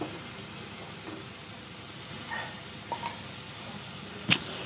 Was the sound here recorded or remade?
recorded